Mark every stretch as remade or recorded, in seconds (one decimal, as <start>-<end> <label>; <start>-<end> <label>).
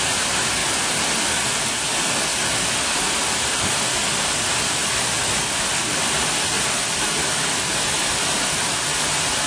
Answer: 0.0-0.6 recorded; 0.6-1.5 remade; 1.5-4.8 recorded; 4.8-8.7 remade; 8.7-9.5 recorded